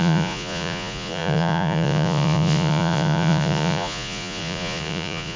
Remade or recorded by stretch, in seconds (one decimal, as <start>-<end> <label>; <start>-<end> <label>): 0.0-5.4 remade